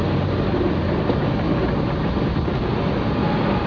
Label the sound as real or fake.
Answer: real